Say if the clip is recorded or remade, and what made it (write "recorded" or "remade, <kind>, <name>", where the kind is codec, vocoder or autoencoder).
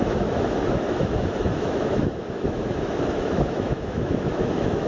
remade, autoencoder, DAC-VAE